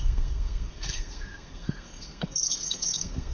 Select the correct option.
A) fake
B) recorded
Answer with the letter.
A